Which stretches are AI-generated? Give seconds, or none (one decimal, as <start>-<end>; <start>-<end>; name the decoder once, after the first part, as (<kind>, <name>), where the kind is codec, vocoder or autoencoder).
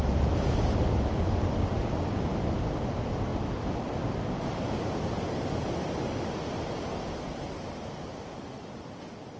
none